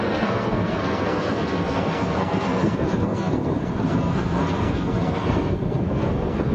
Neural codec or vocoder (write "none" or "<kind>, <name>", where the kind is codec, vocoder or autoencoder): codec, SNAC